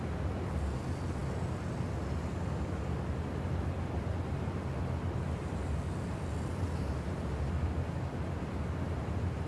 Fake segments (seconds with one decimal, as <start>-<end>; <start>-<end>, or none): none